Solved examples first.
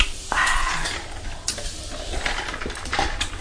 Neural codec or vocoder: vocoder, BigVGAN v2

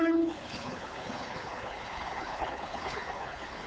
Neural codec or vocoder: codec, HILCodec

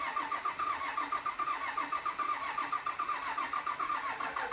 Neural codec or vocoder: none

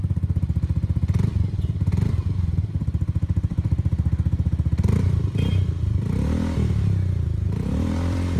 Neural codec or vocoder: vocoder, BigVGAN v2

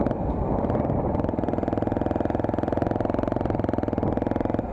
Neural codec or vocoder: none